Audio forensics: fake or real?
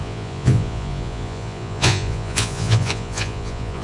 fake